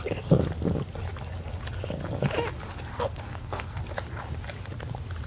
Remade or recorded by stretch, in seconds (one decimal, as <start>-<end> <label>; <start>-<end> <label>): 0.0-2.9 recorded; 2.9-3.8 remade; 3.8-5.3 recorded